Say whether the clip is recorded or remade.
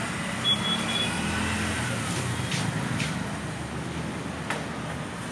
recorded